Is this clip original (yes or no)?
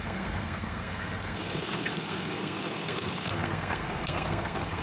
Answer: no